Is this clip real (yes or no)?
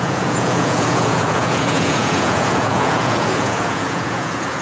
no